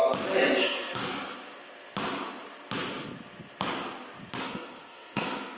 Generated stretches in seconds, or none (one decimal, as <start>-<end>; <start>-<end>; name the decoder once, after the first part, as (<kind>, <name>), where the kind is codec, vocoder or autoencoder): 0.6-1.0 (codec, SNAC); 4.4-5.6